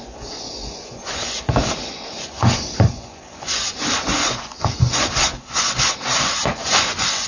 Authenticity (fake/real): fake